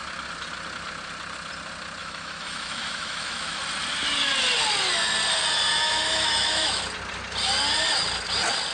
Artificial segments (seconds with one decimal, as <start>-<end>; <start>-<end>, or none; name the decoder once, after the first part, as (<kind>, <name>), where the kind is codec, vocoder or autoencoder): 2.0-3.6 (autoencoder, DAC-VAE); 5.7-6.8